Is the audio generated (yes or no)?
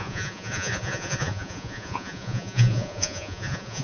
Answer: yes